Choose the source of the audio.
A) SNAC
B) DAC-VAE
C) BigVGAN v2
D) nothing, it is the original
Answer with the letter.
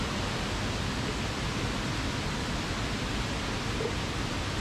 D